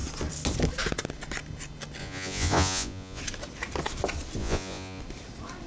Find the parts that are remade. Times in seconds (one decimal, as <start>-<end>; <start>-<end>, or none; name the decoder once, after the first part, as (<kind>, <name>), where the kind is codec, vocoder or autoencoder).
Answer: 2.0-3.2 (vocoder, Vocos); 4.4-5.0